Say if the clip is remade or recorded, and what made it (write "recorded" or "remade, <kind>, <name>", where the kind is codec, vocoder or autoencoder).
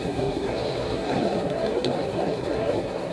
remade, codec, SNAC